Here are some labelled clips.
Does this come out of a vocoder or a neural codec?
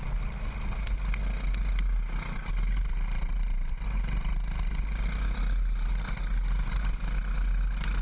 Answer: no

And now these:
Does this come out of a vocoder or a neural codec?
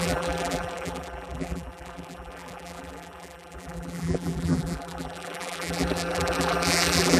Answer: yes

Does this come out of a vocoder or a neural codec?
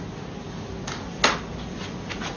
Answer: no